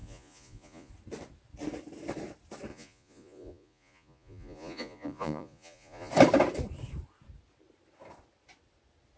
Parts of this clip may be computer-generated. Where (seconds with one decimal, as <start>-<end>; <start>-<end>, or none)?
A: 0.0-0.9; 2.7-6.1